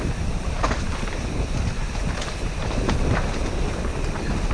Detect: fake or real real